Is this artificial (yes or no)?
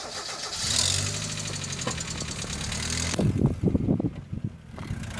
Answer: no